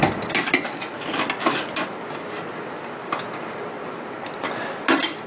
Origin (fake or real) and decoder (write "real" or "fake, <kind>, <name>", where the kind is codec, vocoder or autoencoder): real